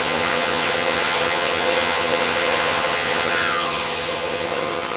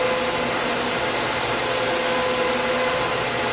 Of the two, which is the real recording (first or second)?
second